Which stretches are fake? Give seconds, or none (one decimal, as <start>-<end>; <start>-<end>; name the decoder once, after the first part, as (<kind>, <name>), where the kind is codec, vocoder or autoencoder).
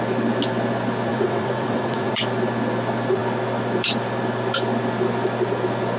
1.1-2.2 (vocoder, WaveNeXt)